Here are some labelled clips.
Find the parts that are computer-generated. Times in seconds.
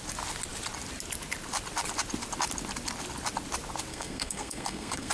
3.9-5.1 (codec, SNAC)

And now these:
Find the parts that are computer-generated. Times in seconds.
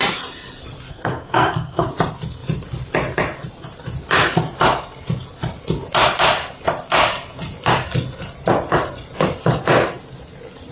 0.9-1.9 (codec, SNAC)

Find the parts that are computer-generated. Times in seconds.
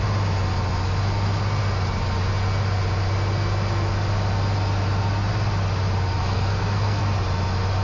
6.2-7.0 (codec, SNAC)